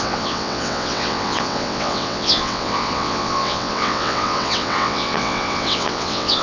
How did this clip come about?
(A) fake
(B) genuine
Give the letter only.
A